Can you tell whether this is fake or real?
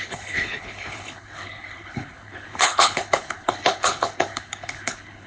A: fake